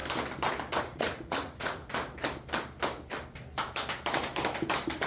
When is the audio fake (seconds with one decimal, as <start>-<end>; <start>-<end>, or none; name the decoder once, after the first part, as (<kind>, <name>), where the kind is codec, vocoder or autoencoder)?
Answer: 0.8-1.8 (vocoder, Vocos)

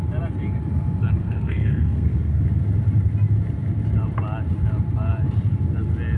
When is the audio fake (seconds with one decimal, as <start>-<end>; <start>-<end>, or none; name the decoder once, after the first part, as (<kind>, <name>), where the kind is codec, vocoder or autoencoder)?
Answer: 1.2-2.4 (codec, SNAC)

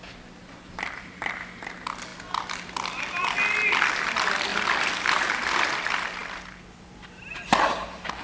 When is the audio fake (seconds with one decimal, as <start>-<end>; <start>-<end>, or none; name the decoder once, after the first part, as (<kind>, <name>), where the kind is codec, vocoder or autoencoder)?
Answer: none

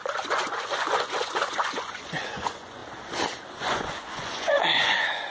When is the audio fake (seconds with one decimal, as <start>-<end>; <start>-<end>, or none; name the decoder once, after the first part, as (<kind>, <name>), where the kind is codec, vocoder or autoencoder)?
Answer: 0.0-2.8 (vocoder, Vocos); 3.6-5.3

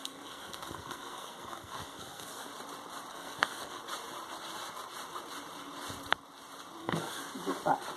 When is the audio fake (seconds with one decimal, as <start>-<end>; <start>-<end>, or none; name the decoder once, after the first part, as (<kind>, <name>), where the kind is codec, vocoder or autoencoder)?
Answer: 0.0-2.5 (codec, SNAC); 3.1-3.8; 6.8-7.2

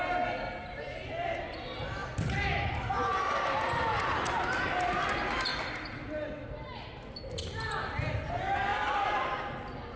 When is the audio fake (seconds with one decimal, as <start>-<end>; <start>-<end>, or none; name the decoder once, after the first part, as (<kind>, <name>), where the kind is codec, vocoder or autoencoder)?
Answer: 2.0-4.6 (vocoder, BigVGAN v2); 5.5-7.2; 8.7-9.4